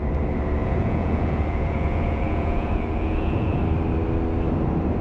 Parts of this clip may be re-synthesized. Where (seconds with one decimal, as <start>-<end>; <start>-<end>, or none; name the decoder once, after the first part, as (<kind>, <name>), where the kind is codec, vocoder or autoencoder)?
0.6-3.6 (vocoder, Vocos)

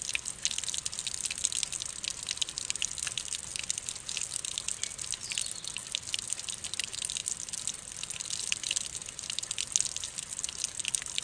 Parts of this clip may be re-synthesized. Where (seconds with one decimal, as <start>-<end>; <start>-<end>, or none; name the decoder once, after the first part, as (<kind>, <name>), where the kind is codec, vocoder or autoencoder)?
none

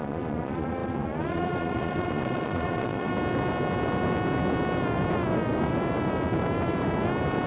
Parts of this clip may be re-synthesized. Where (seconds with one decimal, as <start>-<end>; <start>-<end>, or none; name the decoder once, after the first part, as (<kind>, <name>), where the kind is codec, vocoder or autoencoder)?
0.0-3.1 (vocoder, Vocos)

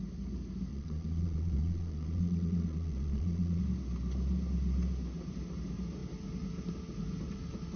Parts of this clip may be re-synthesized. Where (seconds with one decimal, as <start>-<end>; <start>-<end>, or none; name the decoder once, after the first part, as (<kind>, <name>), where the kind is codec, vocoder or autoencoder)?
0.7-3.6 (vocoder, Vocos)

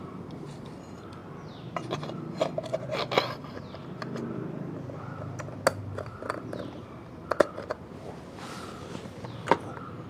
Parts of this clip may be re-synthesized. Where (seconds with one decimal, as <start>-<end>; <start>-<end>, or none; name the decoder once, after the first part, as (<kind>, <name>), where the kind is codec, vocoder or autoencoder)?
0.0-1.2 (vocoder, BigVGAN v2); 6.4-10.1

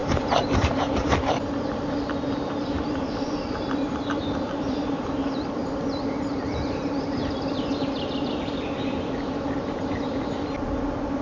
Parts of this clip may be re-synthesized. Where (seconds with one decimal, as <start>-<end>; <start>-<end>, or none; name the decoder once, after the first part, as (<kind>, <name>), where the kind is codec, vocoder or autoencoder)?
0.0-5.6 (vocoder, BigVGAN v2); 6.2-7.2